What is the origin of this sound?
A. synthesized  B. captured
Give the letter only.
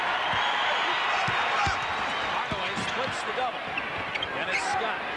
B